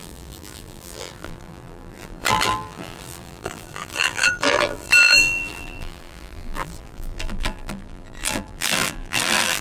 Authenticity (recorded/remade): remade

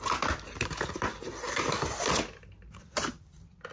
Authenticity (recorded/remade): recorded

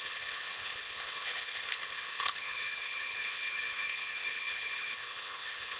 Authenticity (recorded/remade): remade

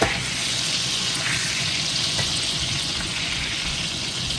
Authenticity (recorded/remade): remade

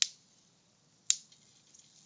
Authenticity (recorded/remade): recorded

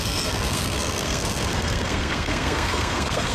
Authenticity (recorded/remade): remade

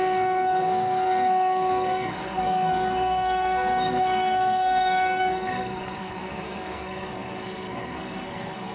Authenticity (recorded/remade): remade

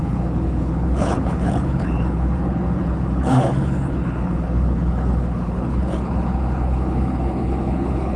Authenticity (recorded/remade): remade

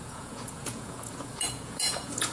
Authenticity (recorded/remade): remade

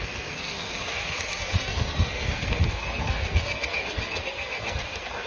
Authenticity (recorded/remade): remade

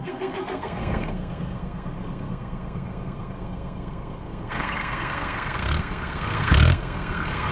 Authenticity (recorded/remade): remade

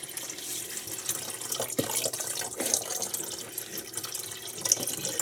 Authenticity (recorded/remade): recorded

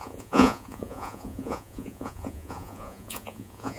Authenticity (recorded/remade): remade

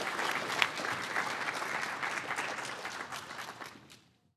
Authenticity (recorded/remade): recorded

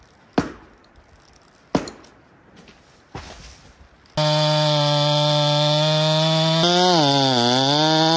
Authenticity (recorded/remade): recorded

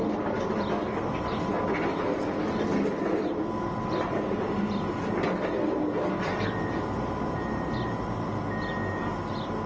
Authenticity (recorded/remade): recorded